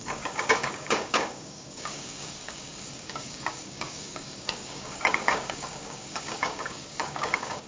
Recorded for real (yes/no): no